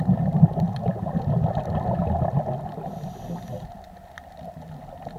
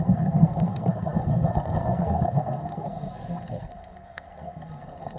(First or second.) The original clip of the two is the first